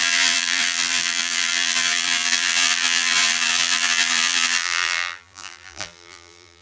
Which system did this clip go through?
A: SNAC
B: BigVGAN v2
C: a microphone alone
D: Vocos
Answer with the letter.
B